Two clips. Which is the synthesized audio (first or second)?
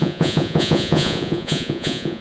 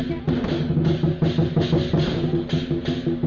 first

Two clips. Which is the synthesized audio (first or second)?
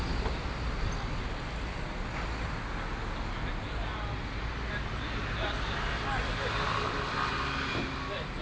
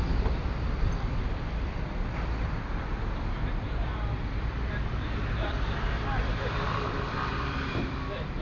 second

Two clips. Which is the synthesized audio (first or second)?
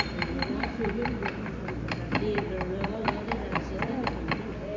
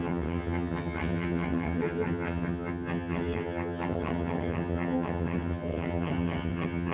second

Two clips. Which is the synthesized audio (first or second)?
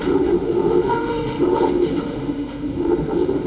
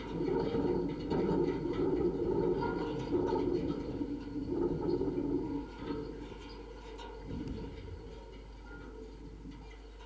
first